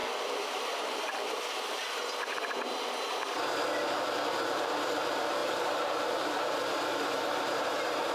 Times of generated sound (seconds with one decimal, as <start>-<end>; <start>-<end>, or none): 0.0-1.5; 5.4-8.1